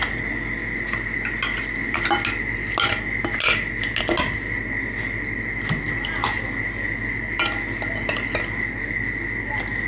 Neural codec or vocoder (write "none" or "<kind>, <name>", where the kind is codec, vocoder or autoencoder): none